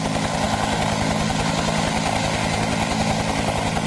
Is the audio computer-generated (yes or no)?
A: no